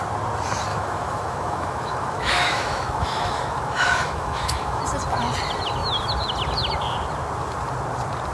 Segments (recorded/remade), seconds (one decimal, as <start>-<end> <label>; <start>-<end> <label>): 0.0-0.7 recorded; 0.7-4.8 remade; 4.8-8.3 recorded